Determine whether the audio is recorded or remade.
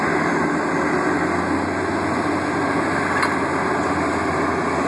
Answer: recorded